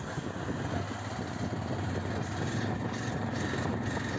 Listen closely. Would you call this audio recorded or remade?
recorded